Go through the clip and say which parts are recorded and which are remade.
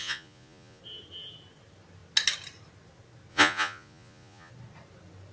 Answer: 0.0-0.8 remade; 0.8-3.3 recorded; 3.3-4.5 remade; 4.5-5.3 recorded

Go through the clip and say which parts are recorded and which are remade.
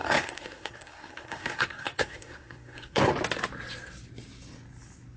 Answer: 0.0-3.1 remade; 3.1-5.2 recorded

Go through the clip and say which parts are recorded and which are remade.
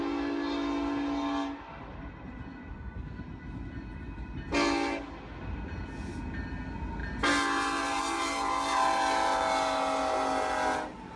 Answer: 0.0-2.7 recorded; 2.7-3.2 remade; 3.2-11.2 recorded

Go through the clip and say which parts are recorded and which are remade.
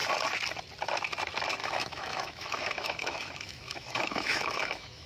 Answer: 0.0-1.6 recorded; 1.6-5.1 remade